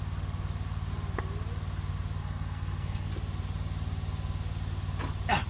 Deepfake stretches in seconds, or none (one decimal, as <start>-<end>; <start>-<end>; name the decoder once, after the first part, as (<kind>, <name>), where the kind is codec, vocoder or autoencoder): 2.2-3.1 (codec, SNAC)